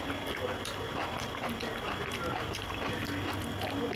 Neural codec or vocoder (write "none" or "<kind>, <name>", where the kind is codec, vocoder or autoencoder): none